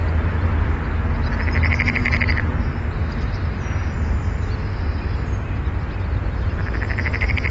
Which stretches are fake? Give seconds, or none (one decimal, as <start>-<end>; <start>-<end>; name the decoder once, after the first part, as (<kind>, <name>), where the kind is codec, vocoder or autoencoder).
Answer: 0.0-0.8 (vocoder, BigVGAN v2)